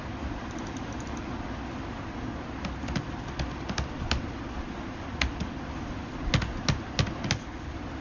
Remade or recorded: recorded